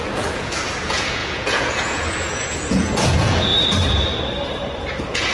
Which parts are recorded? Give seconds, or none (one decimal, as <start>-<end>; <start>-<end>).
3.5-4.8